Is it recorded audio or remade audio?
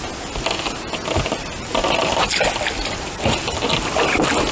recorded